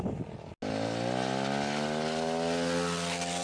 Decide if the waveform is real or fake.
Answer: real